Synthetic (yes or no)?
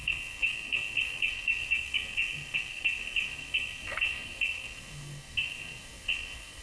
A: yes